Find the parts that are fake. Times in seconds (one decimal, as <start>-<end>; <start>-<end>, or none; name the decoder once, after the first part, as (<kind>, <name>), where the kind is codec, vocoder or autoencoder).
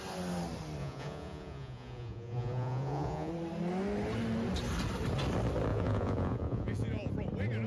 0.8-3.3 (vocoder, Vocos); 5.7-7.1